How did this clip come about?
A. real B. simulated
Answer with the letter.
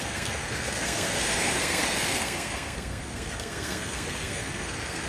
B